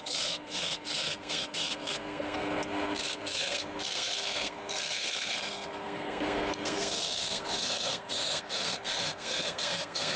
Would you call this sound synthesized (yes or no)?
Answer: yes